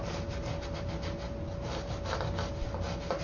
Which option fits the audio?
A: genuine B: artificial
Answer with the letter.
A